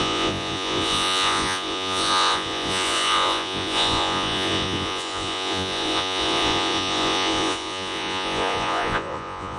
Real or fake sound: fake